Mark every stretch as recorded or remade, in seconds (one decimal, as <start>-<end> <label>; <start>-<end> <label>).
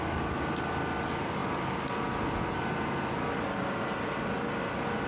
0.0-5.1 recorded